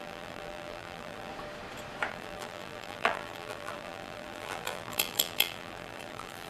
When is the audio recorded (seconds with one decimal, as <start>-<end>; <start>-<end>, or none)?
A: 1.3-2.1